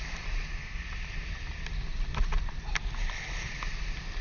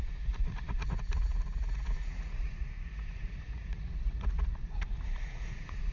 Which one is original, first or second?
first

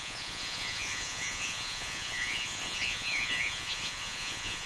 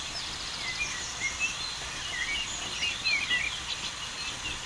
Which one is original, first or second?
second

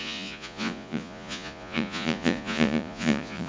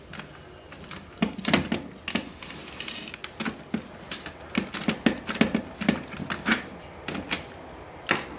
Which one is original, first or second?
second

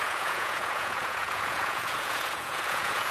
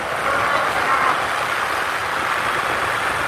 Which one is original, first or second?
second